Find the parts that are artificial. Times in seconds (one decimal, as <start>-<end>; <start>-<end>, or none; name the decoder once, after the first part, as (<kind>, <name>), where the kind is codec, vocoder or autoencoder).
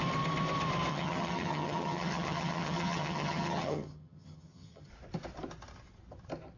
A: 0.9-4.9 (vocoder, HiFi-GAN)